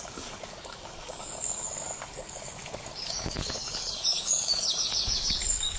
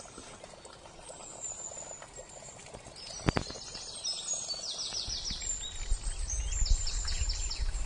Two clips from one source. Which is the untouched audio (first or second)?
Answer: second